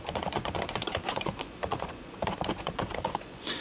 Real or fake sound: fake